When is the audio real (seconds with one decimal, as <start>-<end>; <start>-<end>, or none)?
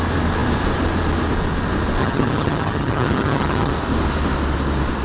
0.0-2.0; 3.7-5.0